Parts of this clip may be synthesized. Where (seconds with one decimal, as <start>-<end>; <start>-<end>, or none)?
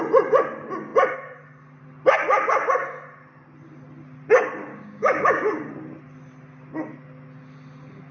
4.7-5.7